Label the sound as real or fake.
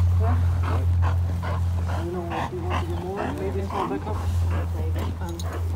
real